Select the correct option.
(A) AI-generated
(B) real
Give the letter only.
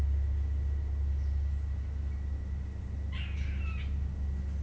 B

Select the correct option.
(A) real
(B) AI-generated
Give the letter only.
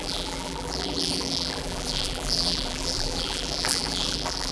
B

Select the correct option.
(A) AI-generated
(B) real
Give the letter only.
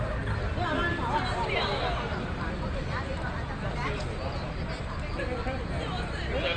B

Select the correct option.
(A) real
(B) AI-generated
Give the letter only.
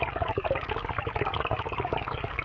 B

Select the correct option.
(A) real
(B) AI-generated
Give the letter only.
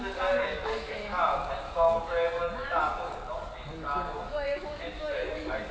B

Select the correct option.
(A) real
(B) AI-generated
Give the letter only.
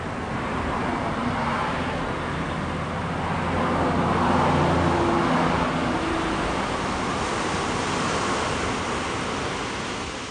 A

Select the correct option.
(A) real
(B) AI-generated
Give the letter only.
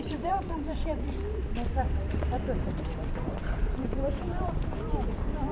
B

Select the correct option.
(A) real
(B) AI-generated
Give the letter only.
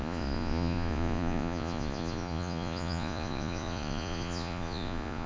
B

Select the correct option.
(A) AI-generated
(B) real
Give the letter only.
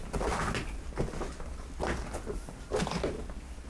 B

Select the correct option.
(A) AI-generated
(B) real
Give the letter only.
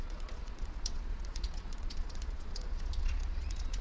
A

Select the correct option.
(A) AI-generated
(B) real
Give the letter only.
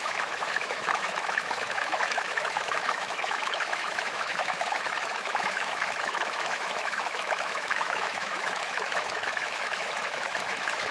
A